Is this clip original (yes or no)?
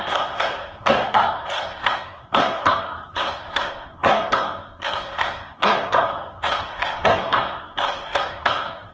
no